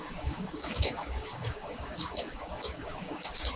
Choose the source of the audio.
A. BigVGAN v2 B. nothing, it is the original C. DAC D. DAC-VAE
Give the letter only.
C